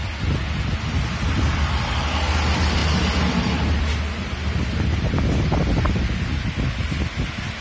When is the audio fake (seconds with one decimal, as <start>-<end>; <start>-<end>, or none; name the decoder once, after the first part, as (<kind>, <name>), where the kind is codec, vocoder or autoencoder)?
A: none